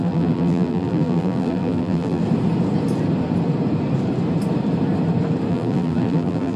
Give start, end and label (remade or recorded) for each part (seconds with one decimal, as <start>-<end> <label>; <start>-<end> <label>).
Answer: 0.0-2.2 remade; 2.2-5.5 recorded; 5.5-6.6 remade

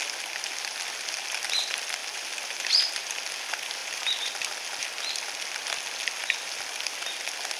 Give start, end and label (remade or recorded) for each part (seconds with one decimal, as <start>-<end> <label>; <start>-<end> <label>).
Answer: 0.0-7.6 recorded

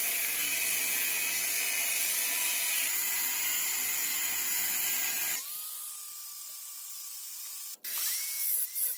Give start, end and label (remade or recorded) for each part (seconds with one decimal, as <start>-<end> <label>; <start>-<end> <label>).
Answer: 0.0-0.6 remade; 0.6-2.5 recorded; 2.5-4.0 remade; 4.0-6.9 recorded; 6.9-9.0 remade